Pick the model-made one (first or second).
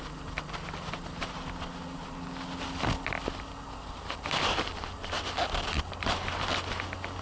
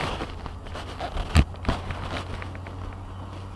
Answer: first